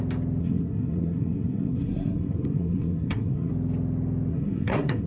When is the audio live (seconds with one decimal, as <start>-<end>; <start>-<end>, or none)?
0.0-0.4; 3.5-4.3